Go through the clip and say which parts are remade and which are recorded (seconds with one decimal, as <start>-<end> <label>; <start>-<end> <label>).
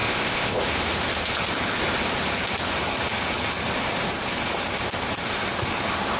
0.0-0.6 remade; 0.6-6.2 recorded